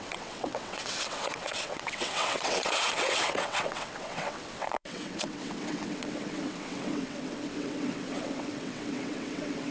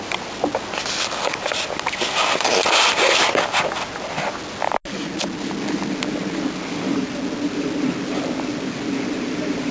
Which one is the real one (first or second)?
second